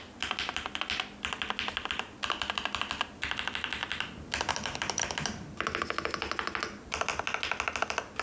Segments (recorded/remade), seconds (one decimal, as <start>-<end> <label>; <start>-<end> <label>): 0.0-5.0 recorded; 5.0-5.8 remade; 5.8-8.2 recorded